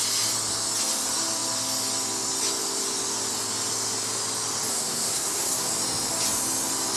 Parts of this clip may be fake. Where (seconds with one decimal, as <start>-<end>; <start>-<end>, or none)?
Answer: 4.7-5.7